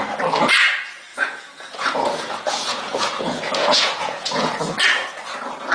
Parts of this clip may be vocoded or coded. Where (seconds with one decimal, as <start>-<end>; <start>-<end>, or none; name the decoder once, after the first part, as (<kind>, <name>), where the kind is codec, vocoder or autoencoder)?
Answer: 1.1-4.5 (vocoder, Vocos)